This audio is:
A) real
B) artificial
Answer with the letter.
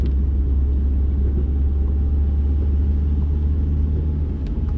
A